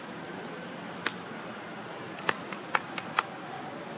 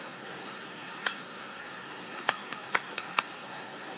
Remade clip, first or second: second